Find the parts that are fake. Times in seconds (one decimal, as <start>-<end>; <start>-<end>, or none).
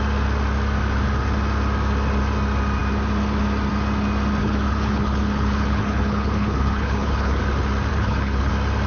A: 4.4-7.4; 7.9-8.5